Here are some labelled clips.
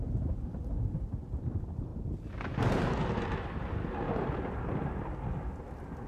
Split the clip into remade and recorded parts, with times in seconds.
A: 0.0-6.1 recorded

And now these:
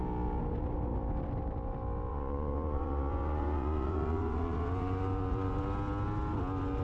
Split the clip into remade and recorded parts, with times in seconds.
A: 0.0-2.1 recorded; 2.1-5.6 remade; 5.6-6.8 recorded

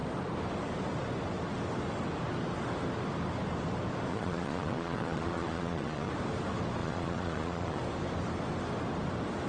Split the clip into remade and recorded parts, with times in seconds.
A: 0.0-4.1 recorded; 4.1-6.1 remade; 6.1-6.8 recorded; 6.8-7.8 remade; 7.8-9.5 recorded

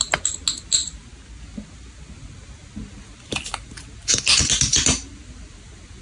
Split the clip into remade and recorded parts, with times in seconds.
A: 0.0-6.0 recorded

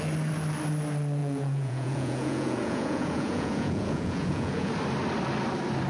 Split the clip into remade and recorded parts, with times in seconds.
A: 0.0-1.2 recorded; 1.2-4.7 remade; 4.7-5.9 recorded

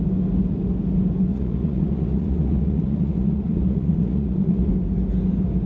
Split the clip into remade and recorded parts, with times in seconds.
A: 0.0-1.3 recorded; 1.3-4.7 remade; 4.7-5.7 recorded

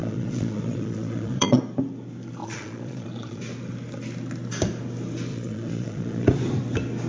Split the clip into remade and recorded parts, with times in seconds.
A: 0.0-1.6 remade; 1.6-2.4 recorded; 2.4-3.4 remade; 3.4-5.3 recorded; 5.3-6.3 remade; 6.3-7.1 recorded